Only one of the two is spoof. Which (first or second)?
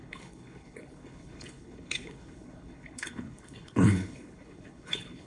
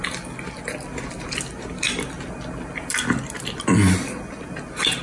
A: first